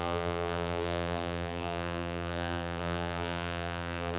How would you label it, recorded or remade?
remade